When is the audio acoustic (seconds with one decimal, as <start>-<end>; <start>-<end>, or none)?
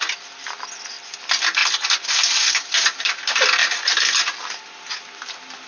0.0-5.7